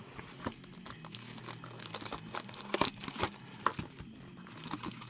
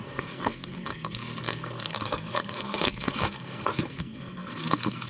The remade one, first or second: second